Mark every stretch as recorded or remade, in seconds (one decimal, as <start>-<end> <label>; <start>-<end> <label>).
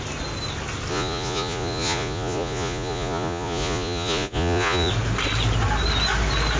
0.0-0.9 recorded; 0.9-4.9 remade; 4.9-6.6 recorded